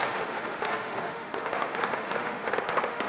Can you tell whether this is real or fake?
fake